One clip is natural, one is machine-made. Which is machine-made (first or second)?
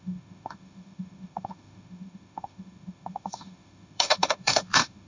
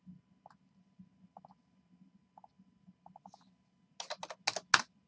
first